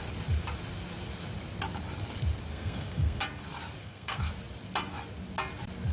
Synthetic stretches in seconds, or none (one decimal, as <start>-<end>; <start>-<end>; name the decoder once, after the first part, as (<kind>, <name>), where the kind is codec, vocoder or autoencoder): 2.5-3.2 (codec, SNAC); 3.8-4.3